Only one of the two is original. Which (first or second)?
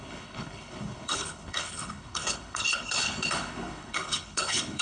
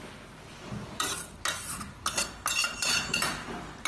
second